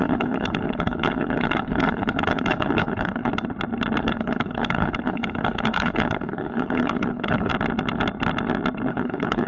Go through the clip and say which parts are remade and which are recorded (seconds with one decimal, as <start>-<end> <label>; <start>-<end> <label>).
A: 0.0-3.3 remade; 3.3-4.0 recorded; 4.0-7.5 remade; 7.5-8.9 recorded; 8.9-9.5 remade